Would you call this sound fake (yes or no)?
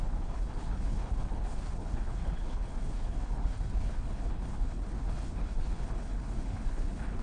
yes